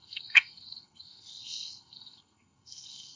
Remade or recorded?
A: remade